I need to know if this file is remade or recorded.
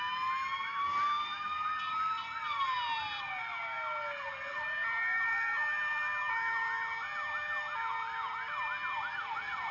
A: recorded